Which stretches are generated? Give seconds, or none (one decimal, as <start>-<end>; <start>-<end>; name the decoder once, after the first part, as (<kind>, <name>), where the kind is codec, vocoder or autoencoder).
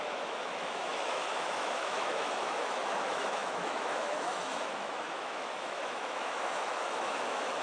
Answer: 0.0-7.6 (autoencoder, DAC-VAE)